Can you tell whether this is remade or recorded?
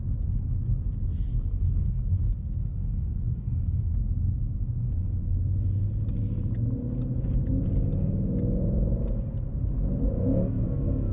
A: recorded